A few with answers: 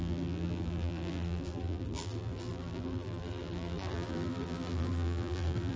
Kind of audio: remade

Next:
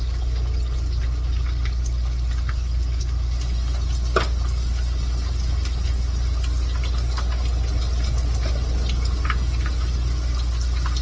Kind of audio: recorded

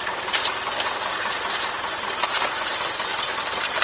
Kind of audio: recorded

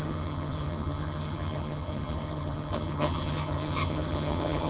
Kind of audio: remade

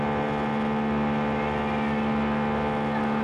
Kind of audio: recorded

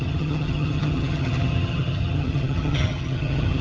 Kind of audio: remade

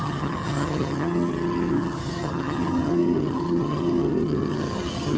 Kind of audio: remade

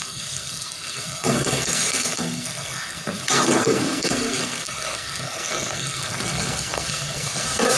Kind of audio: remade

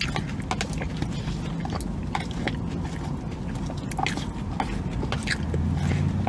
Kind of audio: recorded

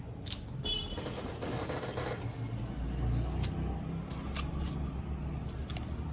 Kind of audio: recorded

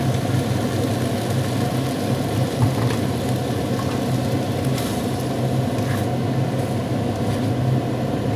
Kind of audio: recorded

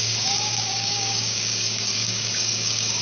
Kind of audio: remade